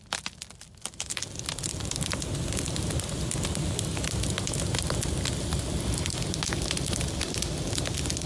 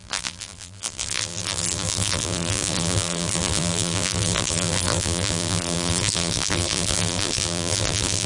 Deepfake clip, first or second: second